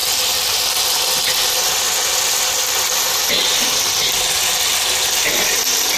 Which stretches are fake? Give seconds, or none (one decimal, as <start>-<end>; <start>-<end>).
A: none